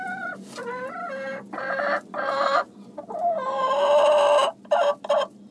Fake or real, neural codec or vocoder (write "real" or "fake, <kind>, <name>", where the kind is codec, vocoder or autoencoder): real